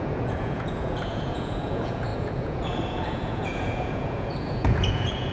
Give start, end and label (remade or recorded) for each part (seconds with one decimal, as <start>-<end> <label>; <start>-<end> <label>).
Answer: 0.0-5.3 remade